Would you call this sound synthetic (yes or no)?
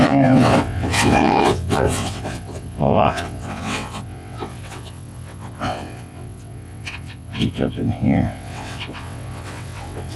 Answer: yes